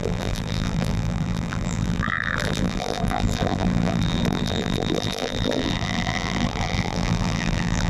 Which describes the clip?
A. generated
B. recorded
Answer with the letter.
A